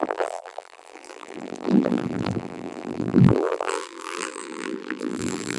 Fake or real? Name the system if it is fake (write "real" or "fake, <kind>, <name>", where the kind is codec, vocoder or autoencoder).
fake, vocoder, BigVGAN v2